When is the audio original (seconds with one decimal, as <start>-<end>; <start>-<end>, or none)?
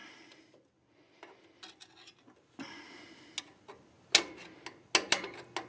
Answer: 0.0-5.7